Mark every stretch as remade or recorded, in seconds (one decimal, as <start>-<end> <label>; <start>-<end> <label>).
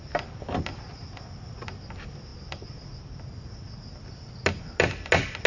0.0-5.5 recorded